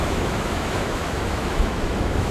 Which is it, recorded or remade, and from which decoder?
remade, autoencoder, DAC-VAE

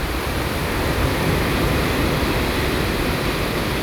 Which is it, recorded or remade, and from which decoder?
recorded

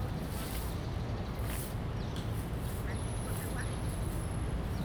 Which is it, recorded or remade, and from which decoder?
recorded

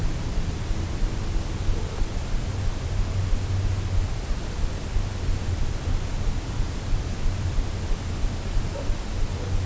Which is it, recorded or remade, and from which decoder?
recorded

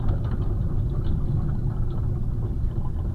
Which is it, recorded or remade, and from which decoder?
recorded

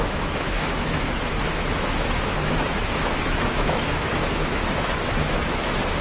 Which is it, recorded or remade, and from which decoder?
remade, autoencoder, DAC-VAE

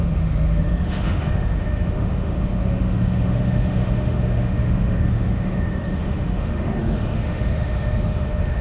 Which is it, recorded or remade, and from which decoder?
remade, autoencoder, DAC-VAE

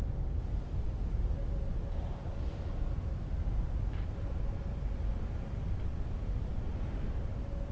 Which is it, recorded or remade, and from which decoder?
recorded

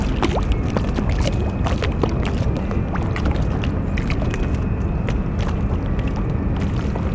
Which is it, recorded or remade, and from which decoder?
recorded